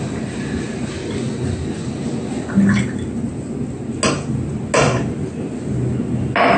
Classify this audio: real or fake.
real